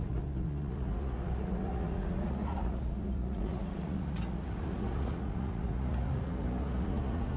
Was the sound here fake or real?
fake